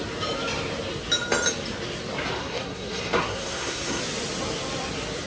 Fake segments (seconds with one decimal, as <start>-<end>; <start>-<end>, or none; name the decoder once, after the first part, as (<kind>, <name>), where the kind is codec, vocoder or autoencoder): 2.4-4.0 (codec, SNAC)